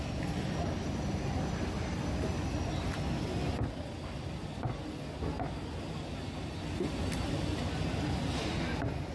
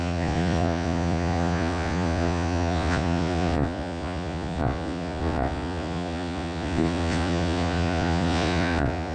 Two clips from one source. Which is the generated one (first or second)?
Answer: second